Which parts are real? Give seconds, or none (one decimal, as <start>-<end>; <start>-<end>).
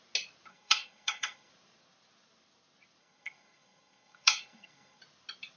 0.0-0.5; 1.5-3.0; 5.0-5.6